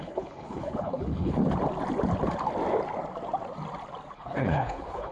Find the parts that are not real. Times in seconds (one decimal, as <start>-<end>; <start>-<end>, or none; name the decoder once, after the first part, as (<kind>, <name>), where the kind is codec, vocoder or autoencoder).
0.0-1.4 (codec, HILCodec); 4.1-5.1